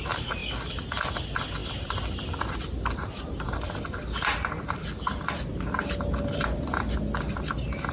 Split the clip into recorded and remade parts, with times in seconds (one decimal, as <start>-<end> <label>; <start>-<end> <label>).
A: 0.0-7.9 recorded